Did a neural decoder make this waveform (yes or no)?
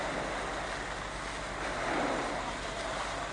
no